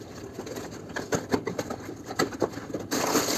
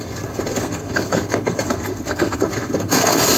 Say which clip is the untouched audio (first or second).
first